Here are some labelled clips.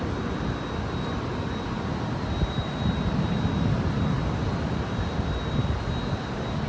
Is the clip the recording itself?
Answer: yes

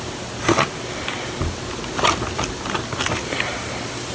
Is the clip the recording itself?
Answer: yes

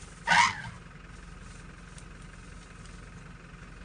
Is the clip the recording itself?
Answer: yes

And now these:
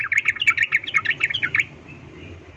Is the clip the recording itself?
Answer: yes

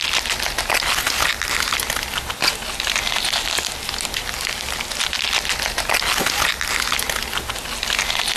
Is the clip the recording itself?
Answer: yes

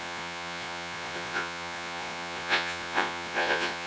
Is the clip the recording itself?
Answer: no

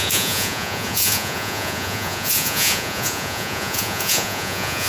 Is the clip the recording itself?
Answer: no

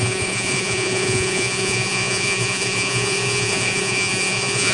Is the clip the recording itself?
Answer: no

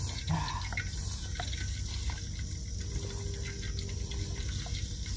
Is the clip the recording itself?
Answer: yes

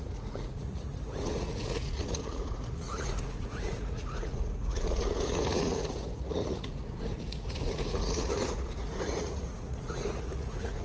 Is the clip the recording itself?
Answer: no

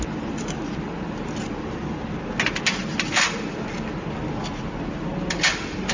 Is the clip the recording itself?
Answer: yes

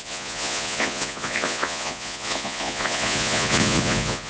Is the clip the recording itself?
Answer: no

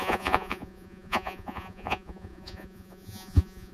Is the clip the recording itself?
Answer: no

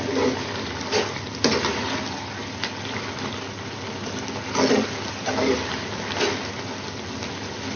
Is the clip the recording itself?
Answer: yes